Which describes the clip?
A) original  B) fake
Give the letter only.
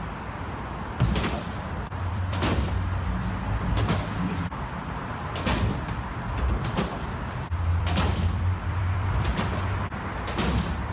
B